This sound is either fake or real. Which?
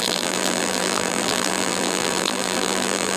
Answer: fake